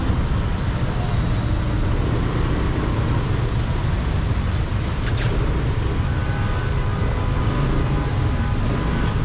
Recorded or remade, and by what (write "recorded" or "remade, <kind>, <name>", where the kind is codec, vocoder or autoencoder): recorded